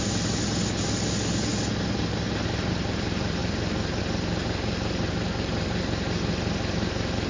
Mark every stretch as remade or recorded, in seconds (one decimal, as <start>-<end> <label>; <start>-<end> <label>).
0.0-7.3 recorded